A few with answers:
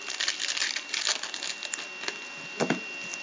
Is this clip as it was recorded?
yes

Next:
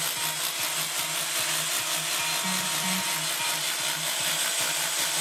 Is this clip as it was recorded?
yes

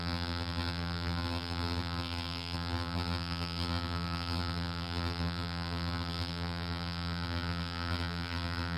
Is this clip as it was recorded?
no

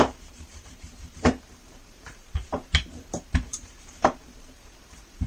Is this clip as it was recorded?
no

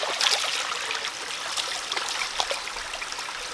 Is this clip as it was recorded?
yes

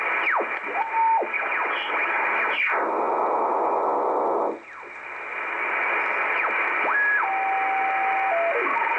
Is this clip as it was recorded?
yes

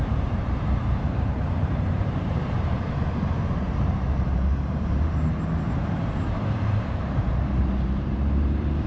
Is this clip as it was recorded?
no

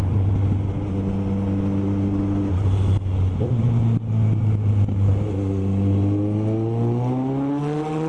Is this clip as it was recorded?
yes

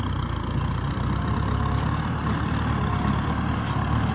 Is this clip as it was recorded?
no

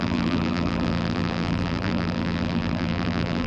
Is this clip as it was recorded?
no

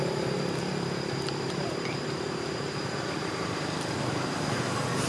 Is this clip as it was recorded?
no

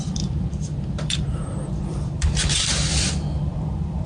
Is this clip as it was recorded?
no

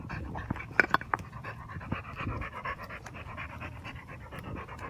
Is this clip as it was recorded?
yes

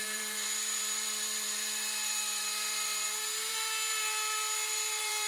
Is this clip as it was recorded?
no